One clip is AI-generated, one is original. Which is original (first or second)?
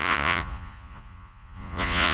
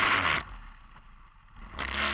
second